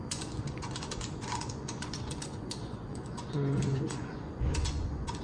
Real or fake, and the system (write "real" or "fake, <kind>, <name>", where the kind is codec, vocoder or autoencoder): fake, vocoder, Vocos